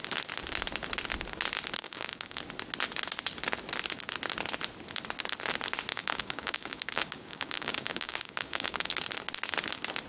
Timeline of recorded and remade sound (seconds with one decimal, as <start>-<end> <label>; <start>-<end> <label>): 0.0-1.8 recorded; 1.8-2.4 remade; 2.4-5.9 recorded; 5.9-8.9 remade; 8.9-10.1 recorded